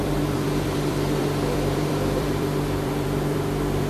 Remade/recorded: remade